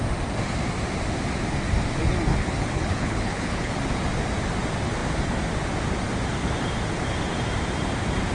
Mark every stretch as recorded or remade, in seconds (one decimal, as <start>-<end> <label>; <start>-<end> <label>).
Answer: 0.0-2.3 recorded; 2.3-3.8 remade; 3.8-8.3 recorded